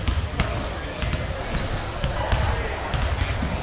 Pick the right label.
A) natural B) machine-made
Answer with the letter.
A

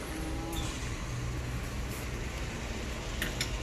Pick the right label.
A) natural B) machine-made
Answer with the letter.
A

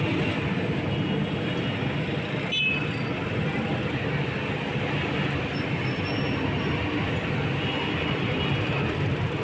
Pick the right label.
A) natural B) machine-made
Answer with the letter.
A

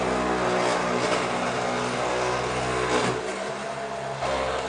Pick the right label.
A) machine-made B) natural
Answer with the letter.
B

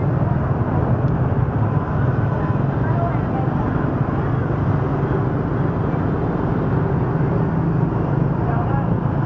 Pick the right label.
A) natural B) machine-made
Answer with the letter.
A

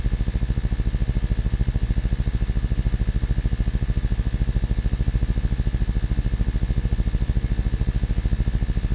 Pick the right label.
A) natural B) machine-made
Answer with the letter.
A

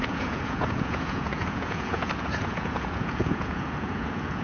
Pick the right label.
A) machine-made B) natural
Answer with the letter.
A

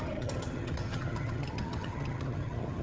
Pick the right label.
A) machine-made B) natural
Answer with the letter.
A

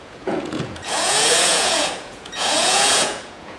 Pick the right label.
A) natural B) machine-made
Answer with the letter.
B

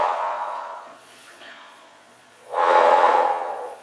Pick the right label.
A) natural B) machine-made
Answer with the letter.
B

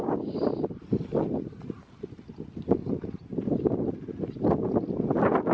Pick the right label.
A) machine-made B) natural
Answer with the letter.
B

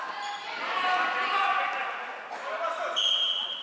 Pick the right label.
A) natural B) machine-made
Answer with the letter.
A